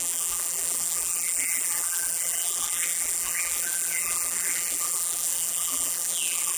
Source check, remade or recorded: remade